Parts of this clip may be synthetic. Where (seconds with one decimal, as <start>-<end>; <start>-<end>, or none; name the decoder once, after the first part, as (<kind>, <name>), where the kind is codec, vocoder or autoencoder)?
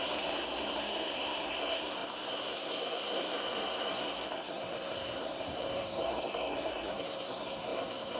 0.0-8.2 (codec, SNAC)